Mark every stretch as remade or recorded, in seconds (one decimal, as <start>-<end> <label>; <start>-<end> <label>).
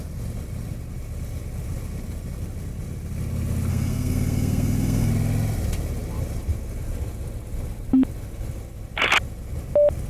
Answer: 0.0-3.7 recorded; 3.7-5.1 remade; 5.1-10.1 recorded